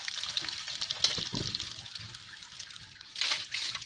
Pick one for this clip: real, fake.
real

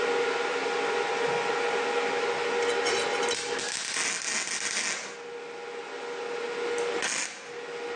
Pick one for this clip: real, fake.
real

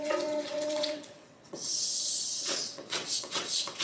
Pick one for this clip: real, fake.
fake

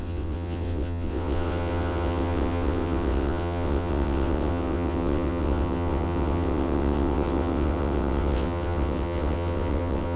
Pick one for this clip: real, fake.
fake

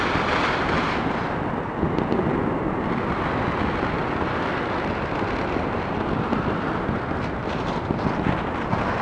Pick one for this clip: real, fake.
real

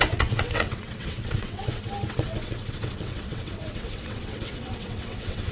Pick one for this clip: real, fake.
fake